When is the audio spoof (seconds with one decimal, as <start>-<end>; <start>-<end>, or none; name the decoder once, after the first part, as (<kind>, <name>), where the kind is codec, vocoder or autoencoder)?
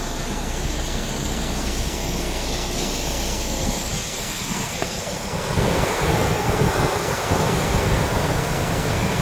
0.0-9.2 (codec, SNAC)